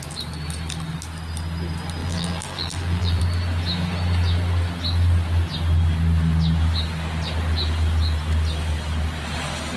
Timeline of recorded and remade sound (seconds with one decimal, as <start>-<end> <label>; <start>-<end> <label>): 0.0-2.0 recorded; 2.0-3.2 remade; 3.2-9.8 recorded